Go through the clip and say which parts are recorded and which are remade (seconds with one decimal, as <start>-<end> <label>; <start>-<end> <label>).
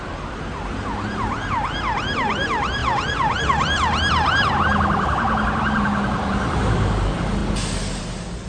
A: 0.0-8.5 recorded